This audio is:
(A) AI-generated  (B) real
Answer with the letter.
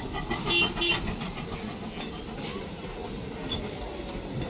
B